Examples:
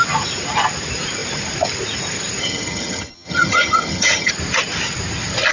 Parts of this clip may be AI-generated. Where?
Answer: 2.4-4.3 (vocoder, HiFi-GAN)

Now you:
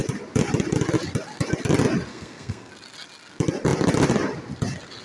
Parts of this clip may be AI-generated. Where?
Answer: 2.1-2.7 (codec, SNAC)

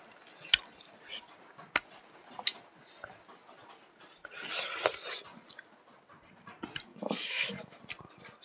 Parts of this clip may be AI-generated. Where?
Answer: 6.9-7.8 (autoencoder, DAC-VAE)

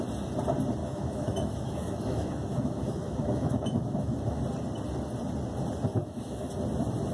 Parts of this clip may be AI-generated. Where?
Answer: 0.8-4.4 (autoencoder, DAC-VAE); 5.9-6.5

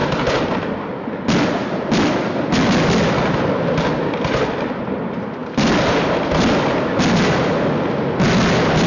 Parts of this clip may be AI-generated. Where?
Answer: none

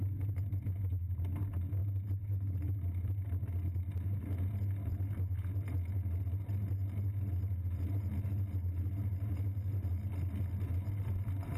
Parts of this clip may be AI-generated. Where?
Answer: 1.8-2.6 (vocoder, BigVGAN v2)